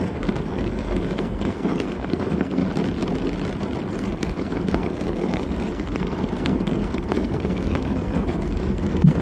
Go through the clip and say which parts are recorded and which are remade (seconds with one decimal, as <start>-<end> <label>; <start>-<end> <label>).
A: 0.0-2.6 remade; 2.6-3.9 recorded; 3.9-9.2 remade